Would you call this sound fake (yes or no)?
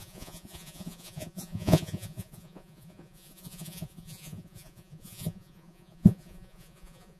yes